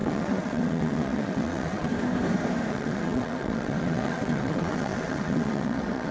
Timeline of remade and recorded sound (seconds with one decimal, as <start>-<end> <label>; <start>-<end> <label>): 0.0-1.9 remade; 1.9-2.7 recorded; 2.7-6.1 remade